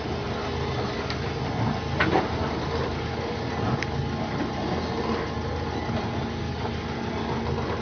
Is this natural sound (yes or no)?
yes